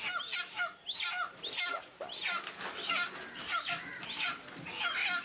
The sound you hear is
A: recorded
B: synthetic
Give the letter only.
A